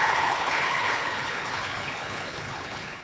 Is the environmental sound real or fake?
fake